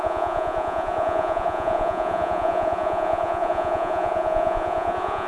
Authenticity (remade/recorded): remade